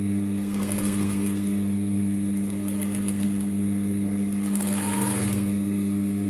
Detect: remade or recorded remade